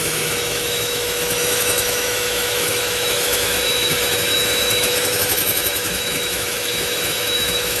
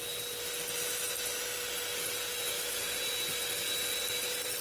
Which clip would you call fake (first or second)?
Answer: first